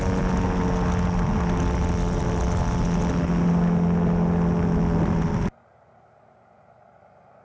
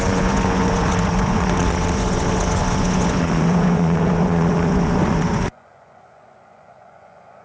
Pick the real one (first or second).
first